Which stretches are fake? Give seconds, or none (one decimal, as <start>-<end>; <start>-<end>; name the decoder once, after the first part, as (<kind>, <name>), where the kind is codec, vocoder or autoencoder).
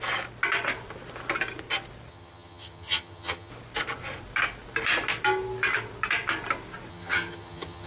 2.1-3.5 (vocoder, HiFi-GAN); 6.9-7.9